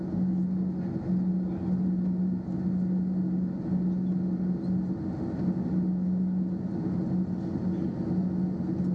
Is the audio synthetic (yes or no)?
no